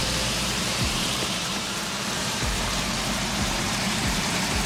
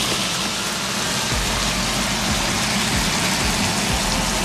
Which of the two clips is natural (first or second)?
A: second